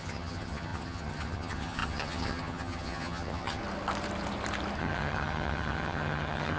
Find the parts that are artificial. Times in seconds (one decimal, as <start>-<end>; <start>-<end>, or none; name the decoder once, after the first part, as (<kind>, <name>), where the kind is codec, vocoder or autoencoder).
0.0-3.6 (vocoder, HiFi-GAN); 4.8-6.6